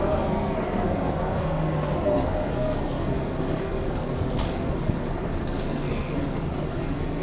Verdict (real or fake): fake